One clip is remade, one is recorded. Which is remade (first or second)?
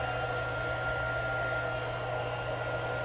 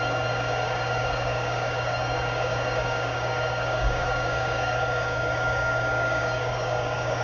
second